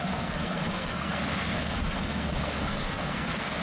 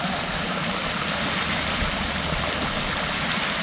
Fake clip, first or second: first